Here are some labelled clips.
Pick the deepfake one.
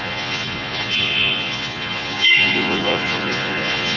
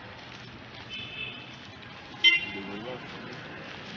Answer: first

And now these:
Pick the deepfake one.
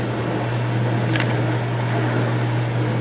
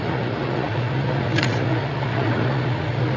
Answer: second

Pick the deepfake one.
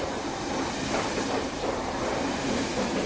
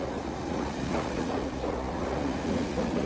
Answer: second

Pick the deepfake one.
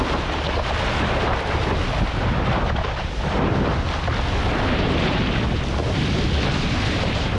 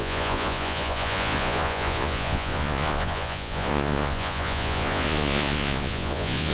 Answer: second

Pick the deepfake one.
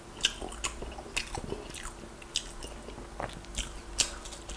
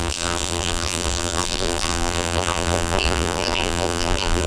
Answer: second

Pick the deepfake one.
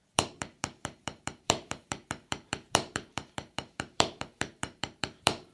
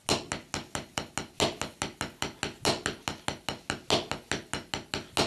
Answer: first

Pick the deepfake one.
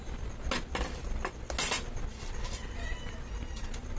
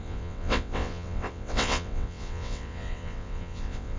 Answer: second